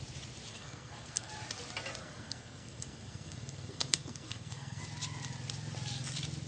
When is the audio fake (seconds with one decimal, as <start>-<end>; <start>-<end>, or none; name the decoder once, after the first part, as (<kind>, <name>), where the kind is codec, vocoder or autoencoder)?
0.5-1.3 (codec, SNAC); 2.0-4.8